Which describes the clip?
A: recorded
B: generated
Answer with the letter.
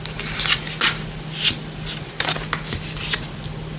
A